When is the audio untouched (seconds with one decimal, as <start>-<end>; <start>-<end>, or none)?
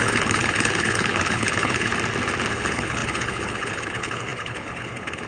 1.9-2.5